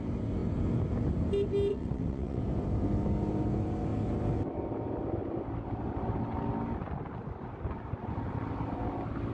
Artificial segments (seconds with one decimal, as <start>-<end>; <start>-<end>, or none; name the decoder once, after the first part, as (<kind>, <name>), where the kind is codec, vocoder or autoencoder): 1.7-2.4 (vocoder, WaveNeXt)